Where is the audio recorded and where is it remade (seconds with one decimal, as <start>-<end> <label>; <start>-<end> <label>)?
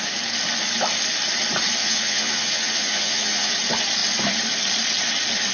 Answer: 0.0-1.8 recorded; 1.8-3.5 remade; 3.5-5.5 recorded